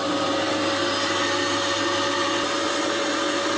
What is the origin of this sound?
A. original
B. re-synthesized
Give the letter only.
A